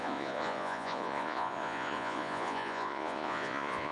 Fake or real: fake